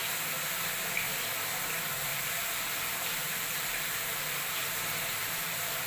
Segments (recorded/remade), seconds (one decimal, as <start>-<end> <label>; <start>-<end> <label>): 0.0-2.1 recorded; 2.1-4.7 remade; 4.7-5.2 recorded; 5.2-5.9 remade